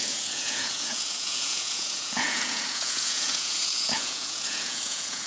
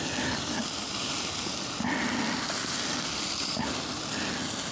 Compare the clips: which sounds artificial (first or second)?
first